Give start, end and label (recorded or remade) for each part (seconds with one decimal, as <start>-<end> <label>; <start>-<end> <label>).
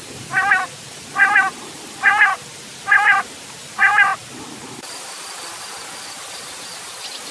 0.0-7.3 recorded